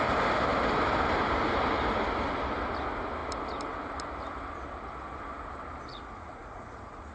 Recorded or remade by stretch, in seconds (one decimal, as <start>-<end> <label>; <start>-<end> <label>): 0.0-5.9 recorded; 5.9-7.1 remade